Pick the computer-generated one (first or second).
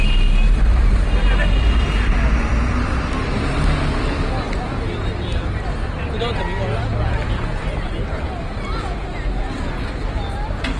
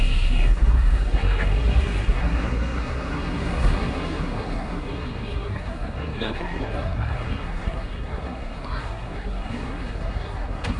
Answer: second